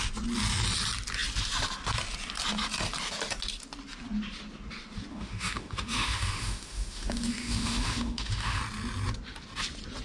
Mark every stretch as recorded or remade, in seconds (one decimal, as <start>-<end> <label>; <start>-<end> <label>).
0.0-5.1 recorded; 5.1-8.6 remade; 8.6-10.0 recorded

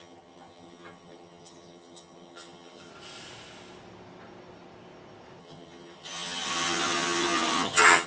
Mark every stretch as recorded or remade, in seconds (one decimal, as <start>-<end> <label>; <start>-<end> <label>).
0.0-2.9 remade; 2.9-5.4 recorded; 5.4-8.1 remade

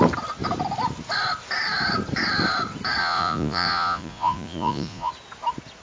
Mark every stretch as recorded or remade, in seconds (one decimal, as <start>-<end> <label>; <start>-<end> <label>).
0.0-3.0 recorded; 3.0-5.1 remade; 5.1-5.8 recorded

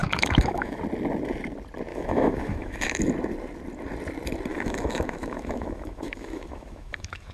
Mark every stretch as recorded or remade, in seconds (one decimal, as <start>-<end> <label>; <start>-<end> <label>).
0.0-0.8 remade; 0.8-1.9 recorded; 1.9-3.0 remade; 3.0-4.5 recorded; 4.5-7.3 remade

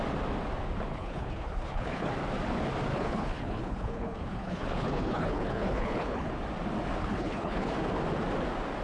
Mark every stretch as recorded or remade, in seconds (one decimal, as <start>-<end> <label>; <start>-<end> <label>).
0.0-0.9 recorded; 0.9-2.1 remade; 2.1-2.9 recorded; 2.9-6.3 remade; 6.3-7.0 recorded; 7.0-7.7 remade; 7.7-8.8 recorded